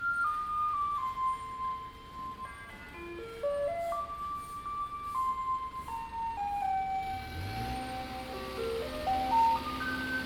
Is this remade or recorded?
recorded